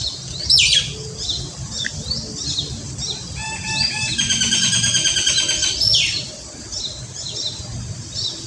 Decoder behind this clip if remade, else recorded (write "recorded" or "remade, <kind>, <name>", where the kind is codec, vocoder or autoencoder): recorded